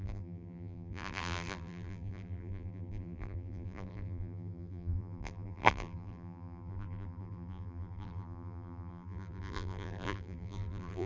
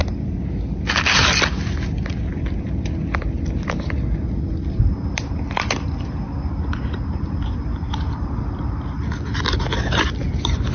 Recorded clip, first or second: second